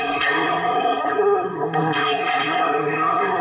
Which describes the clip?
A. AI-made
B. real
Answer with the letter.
A